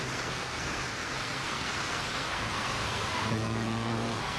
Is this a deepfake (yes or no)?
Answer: yes